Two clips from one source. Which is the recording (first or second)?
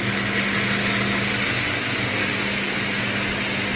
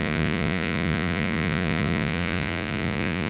first